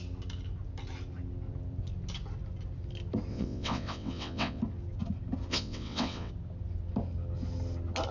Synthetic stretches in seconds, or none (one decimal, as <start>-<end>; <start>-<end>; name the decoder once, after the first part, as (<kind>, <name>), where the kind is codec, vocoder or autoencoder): 3.3-4.6 (vocoder, WaveNeXt); 5.5-6.3